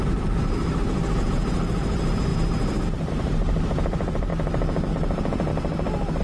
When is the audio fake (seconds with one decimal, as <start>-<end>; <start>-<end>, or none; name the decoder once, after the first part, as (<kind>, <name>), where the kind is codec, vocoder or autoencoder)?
0.0-2.3 (vocoder, BigVGAN v2); 3.1-4.3; 4.9-5.5